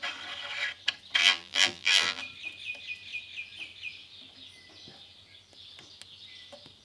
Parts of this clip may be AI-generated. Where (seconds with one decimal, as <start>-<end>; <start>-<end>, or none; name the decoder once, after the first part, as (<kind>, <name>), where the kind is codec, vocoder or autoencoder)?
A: 1.2-2.2 (vocoder, BigVGAN v2)